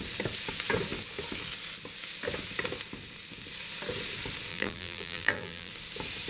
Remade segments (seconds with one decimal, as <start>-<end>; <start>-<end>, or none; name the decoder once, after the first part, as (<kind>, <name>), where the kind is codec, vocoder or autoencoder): 4.5-5.7 (vocoder, BigVGAN v2)